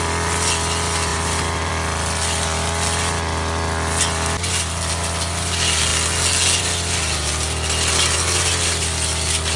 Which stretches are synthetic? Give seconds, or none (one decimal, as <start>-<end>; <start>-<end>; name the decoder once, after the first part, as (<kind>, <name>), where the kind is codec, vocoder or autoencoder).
1.1-1.7 (vocoder, BigVGAN v2)